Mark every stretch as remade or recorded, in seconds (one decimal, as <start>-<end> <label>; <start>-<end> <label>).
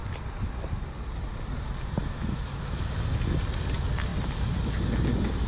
0.0-2.0 recorded; 2.0-2.9 remade; 2.9-5.5 recorded